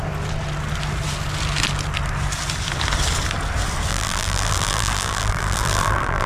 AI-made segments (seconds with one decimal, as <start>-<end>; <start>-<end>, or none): 3.9-6.3